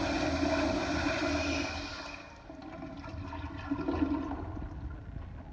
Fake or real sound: real